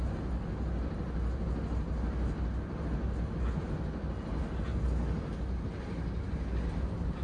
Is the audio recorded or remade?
recorded